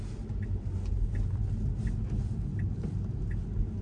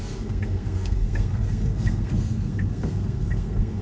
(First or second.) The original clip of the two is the first